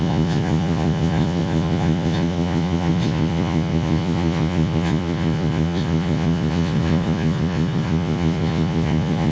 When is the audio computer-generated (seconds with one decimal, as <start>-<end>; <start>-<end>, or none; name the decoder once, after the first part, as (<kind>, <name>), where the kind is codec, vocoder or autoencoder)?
0.0-9.3 (vocoder, Vocos)